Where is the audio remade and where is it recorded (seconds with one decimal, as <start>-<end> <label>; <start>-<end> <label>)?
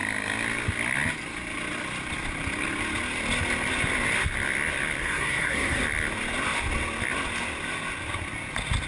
0.0-5.0 recorded; 5.0-5.8 remade; 5.8-8.9 recorded